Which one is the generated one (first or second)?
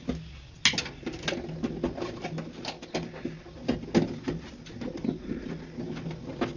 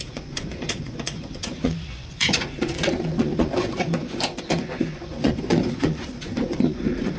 second